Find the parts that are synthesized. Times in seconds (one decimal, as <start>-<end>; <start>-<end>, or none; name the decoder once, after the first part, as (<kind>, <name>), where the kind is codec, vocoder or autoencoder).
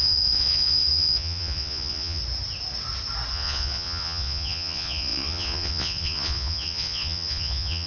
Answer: 0.0-2.2 (vocoder, Vocos); 3.3-7.9